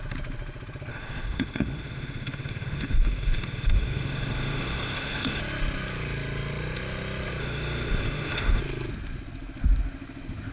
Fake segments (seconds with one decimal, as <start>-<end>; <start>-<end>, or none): 0.9-5.4; 7.4-8.6